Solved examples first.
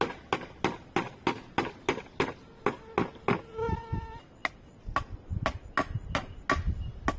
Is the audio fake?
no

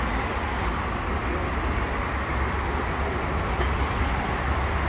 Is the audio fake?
no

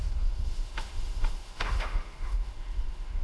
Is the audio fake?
yes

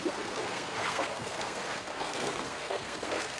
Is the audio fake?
yes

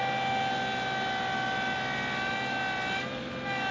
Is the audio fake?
no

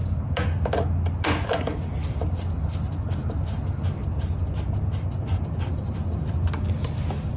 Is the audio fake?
no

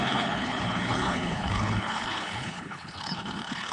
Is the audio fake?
yes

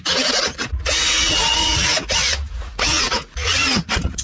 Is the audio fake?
yes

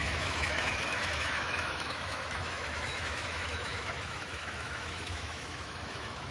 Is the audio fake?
yes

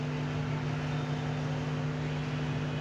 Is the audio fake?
no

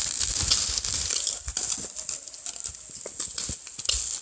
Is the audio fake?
no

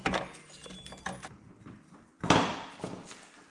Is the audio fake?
no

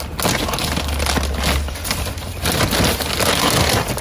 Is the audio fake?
no